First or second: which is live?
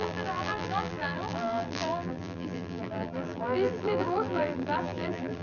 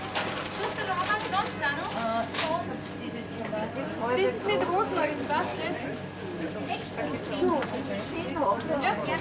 second